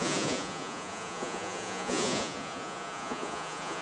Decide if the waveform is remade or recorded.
remade